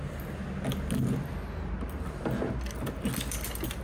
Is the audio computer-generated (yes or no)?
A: no